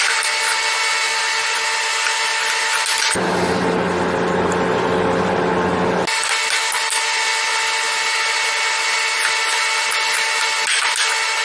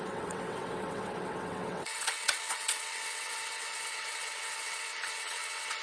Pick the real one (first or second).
first